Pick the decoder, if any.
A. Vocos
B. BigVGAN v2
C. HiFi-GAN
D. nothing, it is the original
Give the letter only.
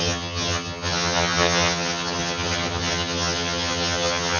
C